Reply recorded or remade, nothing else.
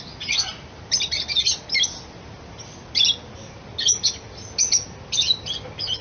recorded